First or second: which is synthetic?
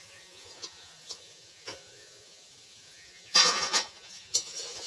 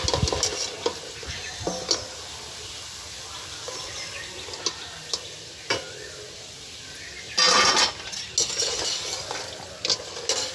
first